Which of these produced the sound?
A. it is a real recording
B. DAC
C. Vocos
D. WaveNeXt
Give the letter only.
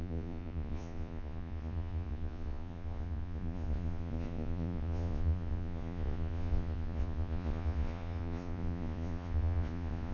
C